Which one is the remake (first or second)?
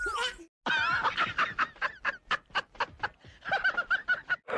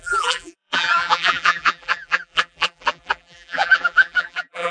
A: second